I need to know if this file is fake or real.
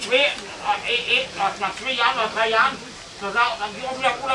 real